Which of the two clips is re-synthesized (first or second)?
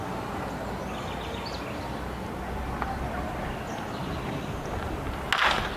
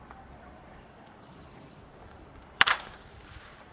second